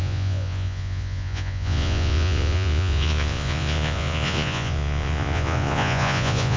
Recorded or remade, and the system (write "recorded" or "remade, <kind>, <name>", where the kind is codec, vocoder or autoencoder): remade, vocoder, Vocos